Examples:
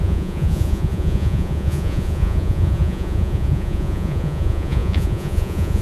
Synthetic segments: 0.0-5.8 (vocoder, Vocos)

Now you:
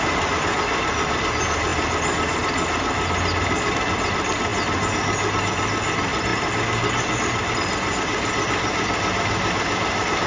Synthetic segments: none

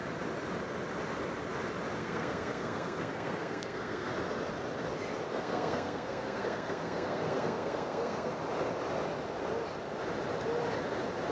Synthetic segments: 2.0-4.1 (codec, SNAC); 5.3-8.3

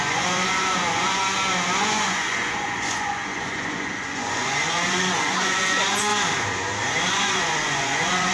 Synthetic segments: 0.0-1.2 (vocoder, Vocos); 1.8-6.1; 7.1-8.3

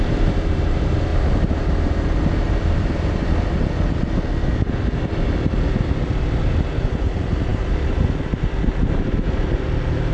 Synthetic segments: 0.0-1.1 (vocoder, BigVGAN v2); 6.4-10.1

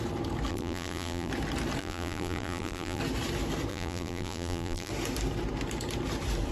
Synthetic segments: 0.5-1.3 (vocoder, BigVGAN v2); 1.8-3.0; 3.7-4.9

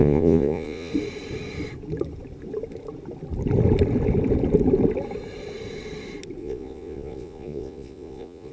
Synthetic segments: 0.0-0.9 (vocoder, Vocos); 6.4-8.5